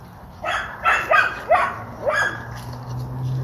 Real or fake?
real